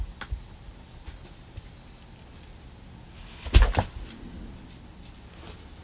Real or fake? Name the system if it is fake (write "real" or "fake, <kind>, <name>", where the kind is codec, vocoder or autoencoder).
real